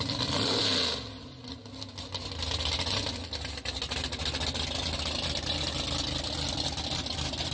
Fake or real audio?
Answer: real